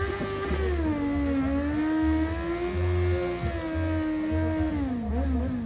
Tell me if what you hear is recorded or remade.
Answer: recorded